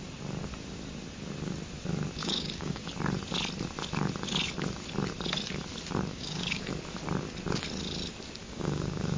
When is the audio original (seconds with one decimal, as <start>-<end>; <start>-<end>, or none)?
0.0-2.2; 2.9-6.1; 6.7-8.4